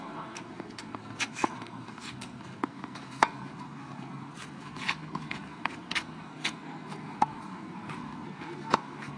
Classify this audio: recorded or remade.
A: remade